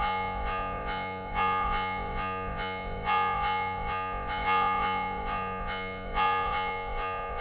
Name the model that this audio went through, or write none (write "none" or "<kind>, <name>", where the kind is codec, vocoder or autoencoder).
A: vocoder, Vocos